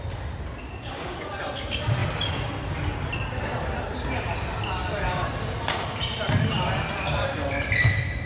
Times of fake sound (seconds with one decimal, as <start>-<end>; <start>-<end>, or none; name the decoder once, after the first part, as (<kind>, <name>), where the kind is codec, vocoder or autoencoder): 0.6-1.3 (codec, DAC)